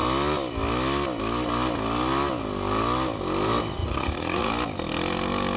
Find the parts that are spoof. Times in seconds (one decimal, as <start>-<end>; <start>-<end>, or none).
3.8-4.5